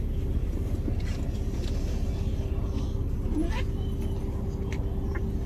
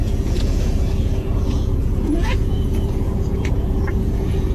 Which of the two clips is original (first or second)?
first